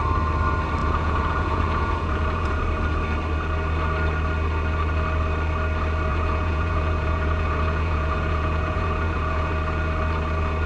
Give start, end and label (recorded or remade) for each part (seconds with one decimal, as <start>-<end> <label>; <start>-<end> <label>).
0.0-0.8 recorded; 0.8-2.6 remade; 2.6-6.1 recorded; 6.1-9.5 remade; 9.5-10.7 recorded